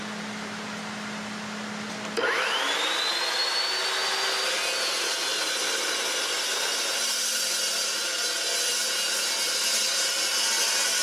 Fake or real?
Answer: real